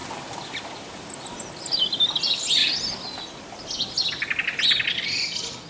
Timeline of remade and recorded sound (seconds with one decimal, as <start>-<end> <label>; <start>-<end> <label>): 0.0-5.7 recorded